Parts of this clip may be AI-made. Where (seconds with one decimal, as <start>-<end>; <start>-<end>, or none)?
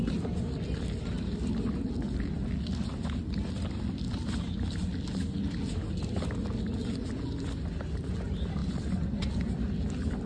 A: none